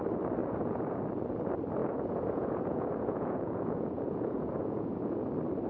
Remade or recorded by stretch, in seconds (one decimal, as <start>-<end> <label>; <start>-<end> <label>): 0.0-0.4 recorded; 0.4-1.0 remade; 1.0-1.8 recorded; 1.8-5.2 remade; 5.2-5.7 recorded